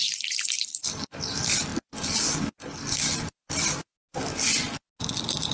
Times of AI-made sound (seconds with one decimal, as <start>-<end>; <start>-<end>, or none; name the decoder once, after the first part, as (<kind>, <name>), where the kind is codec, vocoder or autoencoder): none